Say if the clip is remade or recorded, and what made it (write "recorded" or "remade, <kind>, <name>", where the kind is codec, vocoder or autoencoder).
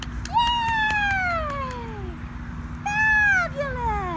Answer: recorded